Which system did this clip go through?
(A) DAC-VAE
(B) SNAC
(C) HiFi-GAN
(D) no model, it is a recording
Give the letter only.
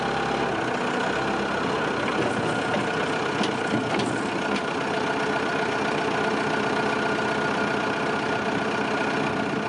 D